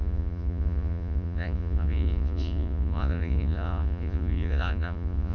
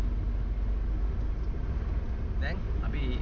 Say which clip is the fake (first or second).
first